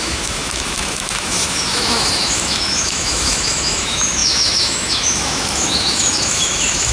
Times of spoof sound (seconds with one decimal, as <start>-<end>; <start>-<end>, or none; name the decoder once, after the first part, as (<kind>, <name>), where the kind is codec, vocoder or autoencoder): 0.0-6.9 (autoencoder, DAC-VAE)